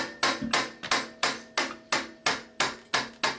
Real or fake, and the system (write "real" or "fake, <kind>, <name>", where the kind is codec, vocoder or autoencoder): real